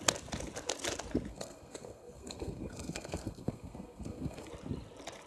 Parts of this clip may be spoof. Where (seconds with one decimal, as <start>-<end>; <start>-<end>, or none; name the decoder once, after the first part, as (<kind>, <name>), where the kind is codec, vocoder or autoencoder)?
1.3-4.5 (codec, SNAC)